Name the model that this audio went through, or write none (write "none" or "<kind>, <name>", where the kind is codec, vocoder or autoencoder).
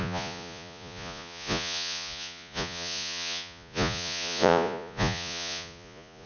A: vocoder, Vocos